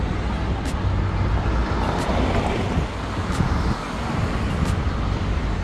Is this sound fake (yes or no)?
no